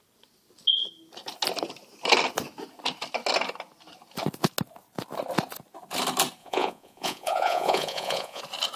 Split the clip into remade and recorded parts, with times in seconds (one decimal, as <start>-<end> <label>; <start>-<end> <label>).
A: 0.0-6.4 recorded; 6.4-8.4 remade; 8.4-8.8 recorded